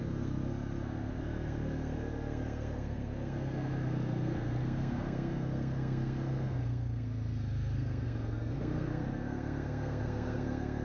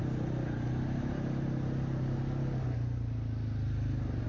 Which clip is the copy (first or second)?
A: first